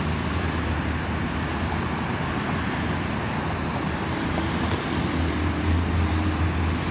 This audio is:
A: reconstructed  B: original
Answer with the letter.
B